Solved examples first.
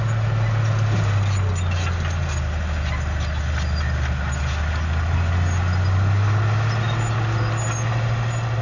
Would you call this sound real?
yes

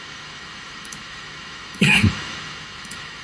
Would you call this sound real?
no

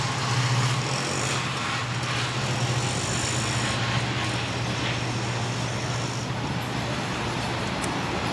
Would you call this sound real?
yes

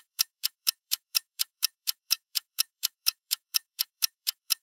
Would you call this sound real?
no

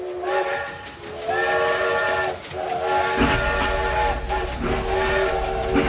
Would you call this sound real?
yes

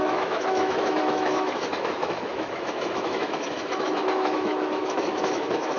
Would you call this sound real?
no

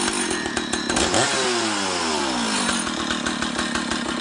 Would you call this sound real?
yes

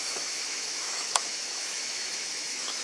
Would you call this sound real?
no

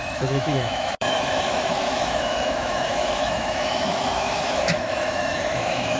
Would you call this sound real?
no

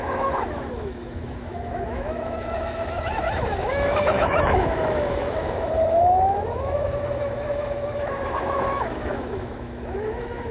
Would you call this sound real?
no